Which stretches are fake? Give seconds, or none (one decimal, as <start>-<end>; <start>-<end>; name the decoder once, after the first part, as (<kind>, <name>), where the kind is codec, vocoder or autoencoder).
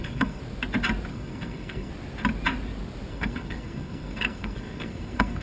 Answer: 0.0-0.4 (codec, SNAC); 1.1-1.9; 3.1-5.4